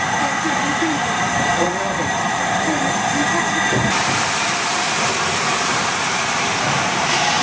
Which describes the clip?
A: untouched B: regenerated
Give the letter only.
B